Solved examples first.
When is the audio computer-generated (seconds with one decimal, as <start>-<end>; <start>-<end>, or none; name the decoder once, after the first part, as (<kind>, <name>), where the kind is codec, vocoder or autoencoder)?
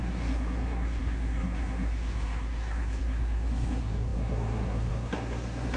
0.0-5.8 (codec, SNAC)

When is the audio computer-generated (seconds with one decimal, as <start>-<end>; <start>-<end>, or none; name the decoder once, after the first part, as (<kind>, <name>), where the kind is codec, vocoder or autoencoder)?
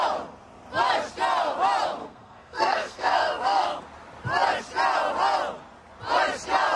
2.0-3.8 (codec, SNAC)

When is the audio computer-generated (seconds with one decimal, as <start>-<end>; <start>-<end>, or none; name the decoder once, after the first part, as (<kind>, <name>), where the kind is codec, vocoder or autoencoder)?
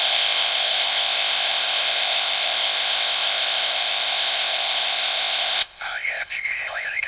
0.0-7.1 (codec, ZipCodec)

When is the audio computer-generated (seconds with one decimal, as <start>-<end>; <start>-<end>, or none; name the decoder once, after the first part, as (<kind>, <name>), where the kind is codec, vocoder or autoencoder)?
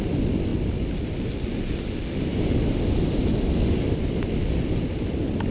none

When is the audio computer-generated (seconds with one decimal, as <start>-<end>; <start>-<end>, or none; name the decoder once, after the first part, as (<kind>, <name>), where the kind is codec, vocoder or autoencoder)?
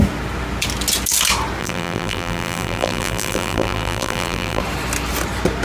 1.6-4.6 (vocoder, BigVGAN v2)